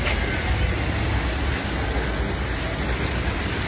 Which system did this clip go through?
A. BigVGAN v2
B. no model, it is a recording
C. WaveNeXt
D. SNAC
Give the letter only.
B